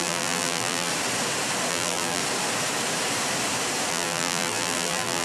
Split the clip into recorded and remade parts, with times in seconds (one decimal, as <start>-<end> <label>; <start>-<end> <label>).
0.0-0.9 remade; 0.9-1.7 recorded; 1.7-2.2 remade; 2.2-3.9 recorded; 3.9-5.2 remade